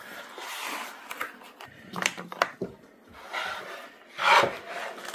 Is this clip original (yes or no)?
yes